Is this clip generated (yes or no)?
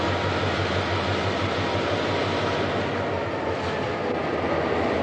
no